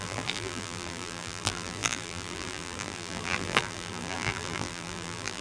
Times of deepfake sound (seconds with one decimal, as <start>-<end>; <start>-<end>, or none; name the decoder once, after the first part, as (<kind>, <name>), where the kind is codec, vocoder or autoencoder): 0.0-5.4 (vocoder, BigVGAN v2)